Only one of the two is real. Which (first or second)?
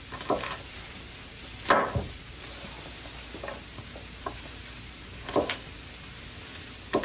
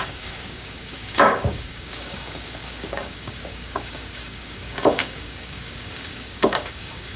first